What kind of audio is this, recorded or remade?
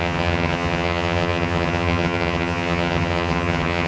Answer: remade